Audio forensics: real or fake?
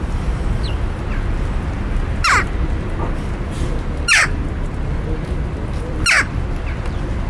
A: real